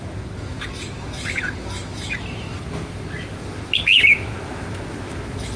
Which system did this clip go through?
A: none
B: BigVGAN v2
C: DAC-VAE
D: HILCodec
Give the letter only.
C